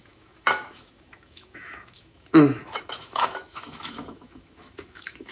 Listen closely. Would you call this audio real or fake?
fake